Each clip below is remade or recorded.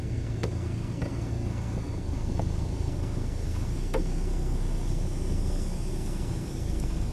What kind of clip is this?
remade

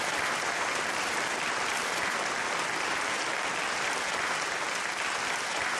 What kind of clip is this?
recorded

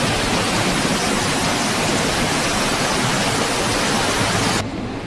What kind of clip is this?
recorded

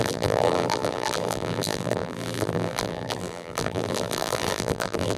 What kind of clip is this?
remade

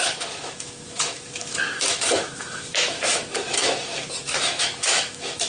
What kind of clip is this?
remade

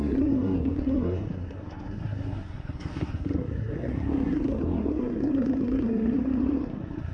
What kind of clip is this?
remade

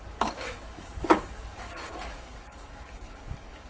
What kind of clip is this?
remade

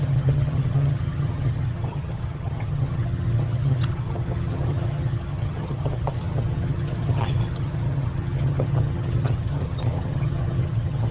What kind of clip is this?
remade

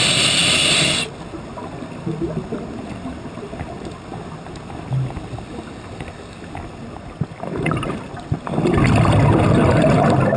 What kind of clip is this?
recorded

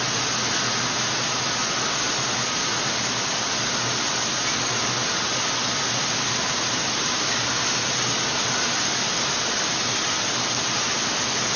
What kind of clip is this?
recorded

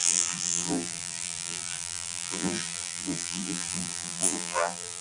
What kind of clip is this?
remade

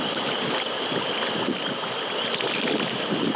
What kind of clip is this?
recorded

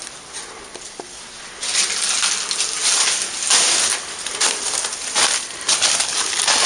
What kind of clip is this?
recorded